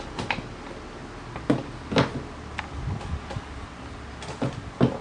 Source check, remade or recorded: recorded